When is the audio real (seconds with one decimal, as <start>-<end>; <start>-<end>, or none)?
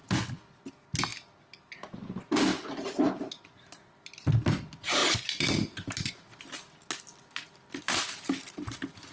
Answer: 0.0-9.1